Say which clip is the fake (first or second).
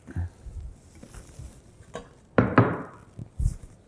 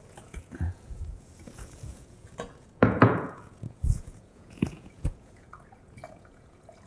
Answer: second